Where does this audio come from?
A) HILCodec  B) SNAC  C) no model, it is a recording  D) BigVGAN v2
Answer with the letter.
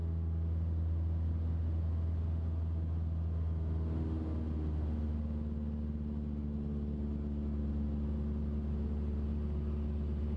C